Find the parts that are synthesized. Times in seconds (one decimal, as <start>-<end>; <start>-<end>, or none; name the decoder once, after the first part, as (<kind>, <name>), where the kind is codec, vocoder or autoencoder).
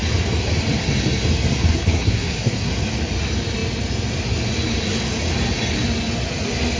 1.7-2.7 (codec, SNAC)